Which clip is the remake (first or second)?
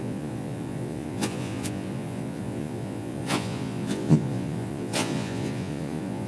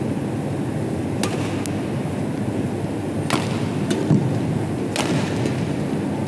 first